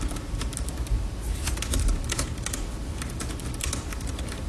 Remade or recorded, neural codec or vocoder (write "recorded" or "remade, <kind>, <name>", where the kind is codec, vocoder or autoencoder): recorded